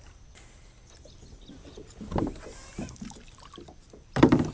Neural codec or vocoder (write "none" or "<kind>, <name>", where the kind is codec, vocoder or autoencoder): none